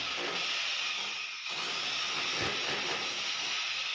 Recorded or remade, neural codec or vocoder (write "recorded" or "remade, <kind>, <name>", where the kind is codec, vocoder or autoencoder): recorded